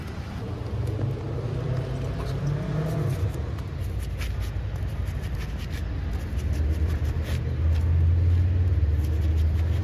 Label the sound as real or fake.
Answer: real